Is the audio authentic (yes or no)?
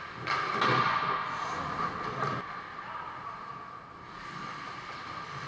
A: yes